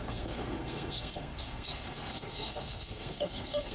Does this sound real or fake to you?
fake